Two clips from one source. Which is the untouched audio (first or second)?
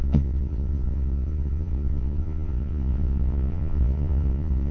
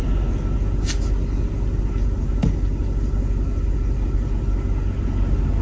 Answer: second